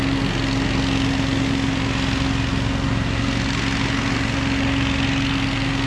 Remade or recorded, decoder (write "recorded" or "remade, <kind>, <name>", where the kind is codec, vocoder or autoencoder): recorded